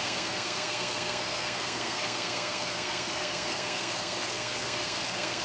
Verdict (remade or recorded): remade